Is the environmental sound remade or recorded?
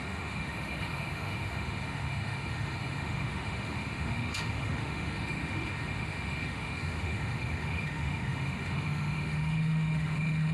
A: remade